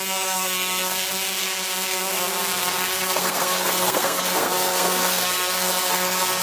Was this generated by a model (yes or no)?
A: yes